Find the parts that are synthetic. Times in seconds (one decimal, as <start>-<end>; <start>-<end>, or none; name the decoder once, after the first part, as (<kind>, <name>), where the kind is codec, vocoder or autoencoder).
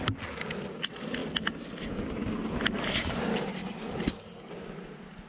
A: none